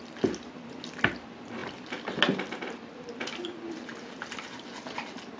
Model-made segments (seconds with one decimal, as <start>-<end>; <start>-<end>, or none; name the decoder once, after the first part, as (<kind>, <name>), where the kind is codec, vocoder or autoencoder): none

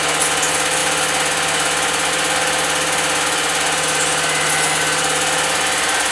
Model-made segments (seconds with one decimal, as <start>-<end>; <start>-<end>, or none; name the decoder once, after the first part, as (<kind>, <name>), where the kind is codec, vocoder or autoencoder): none